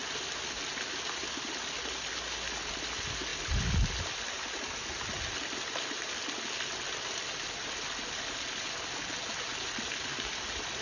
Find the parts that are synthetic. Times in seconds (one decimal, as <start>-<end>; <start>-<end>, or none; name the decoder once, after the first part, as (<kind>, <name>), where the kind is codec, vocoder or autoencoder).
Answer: none

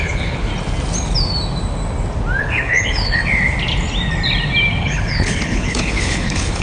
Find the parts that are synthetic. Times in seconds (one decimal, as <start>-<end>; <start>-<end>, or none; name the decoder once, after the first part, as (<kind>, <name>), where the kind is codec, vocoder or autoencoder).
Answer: 0.0-0.5 (codec, HILCodec); 2.4-3.2; 4.8-6.6